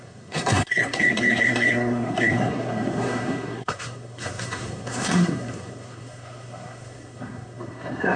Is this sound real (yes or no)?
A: no